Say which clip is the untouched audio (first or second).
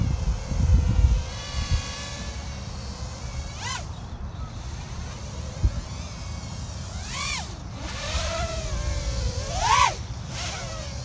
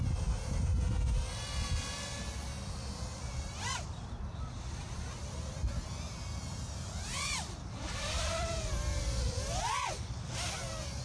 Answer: second